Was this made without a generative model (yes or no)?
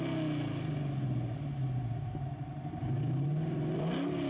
yes